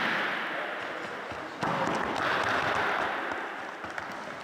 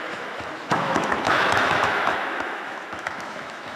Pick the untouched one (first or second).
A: first